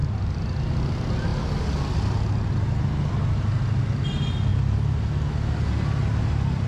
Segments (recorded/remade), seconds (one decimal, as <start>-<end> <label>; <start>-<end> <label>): 0.0-6.7 recorded